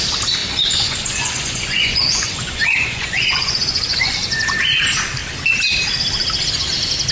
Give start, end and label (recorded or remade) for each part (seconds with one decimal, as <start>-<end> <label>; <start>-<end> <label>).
0.0-0.4 recorded; 0.4-4.6 remade; 4.6-7.1 recorded